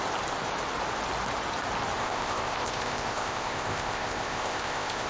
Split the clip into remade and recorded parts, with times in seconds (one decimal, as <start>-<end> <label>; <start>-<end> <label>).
0.0-2.0 recorded; 2.0-5.1 remade